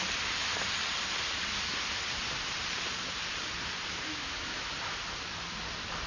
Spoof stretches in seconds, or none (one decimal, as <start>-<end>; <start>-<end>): 4.1-4.7